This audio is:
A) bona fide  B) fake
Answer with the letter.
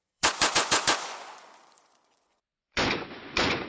B